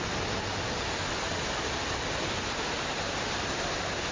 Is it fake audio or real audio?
real